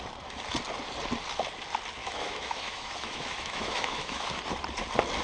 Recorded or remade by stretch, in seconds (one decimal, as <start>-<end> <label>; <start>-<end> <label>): 0.0-2.0 recorded; 2.0-4.4 remade; 4.4-5.2 recorded